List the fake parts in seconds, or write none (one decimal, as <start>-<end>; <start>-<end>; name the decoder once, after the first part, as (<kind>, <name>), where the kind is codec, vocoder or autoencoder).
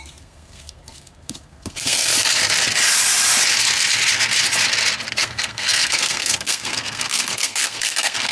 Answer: 0.0-2.1 (codec, SNAC); 5.1-8.3